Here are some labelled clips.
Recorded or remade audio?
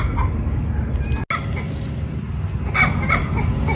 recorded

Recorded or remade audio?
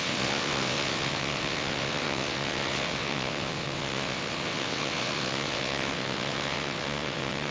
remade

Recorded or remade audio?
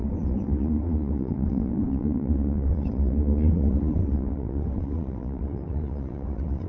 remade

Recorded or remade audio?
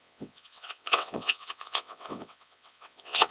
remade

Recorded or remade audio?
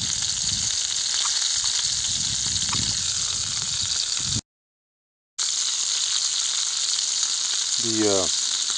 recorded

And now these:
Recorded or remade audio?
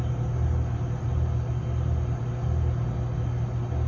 recorded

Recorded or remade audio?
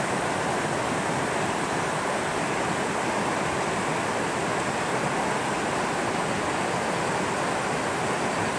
recorded